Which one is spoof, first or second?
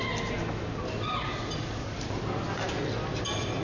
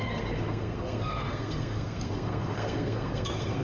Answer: second